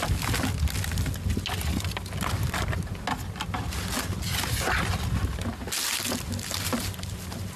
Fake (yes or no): no